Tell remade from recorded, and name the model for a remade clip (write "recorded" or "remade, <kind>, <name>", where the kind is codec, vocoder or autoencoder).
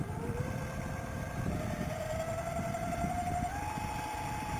remade, vocoder, BigVGAN v2